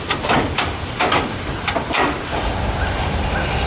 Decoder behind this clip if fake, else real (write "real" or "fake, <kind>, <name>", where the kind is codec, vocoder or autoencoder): real